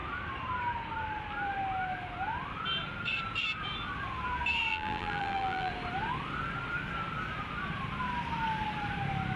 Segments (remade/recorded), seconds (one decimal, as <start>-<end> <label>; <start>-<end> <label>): 0.0-4.7 recorded; 4.7-5.7 remade; 5.7-9.4 recorded

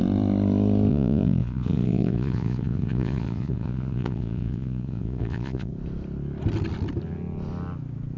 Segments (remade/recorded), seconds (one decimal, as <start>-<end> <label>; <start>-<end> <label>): 0.0-0.9 recorded; 0.9-5.7 remade; 5.7-8.2 recorded